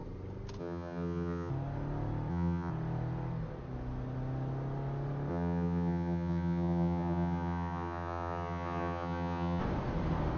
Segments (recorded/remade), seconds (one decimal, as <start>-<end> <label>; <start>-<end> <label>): 0.0-0.6 recorded; 0.6-1.5 remade; 1.5-2.3 recorded; 2.3-2.7 remade; 2.7-5.3 recorded; 5.3-9.6 remade; 9.6-10.4 recorded